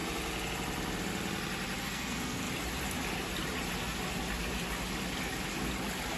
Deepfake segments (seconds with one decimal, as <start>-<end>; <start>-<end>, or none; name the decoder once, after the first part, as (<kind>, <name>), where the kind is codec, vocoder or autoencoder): 1.8-2.4 (codec, SNAC)